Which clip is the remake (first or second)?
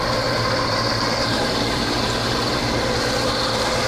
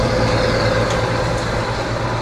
first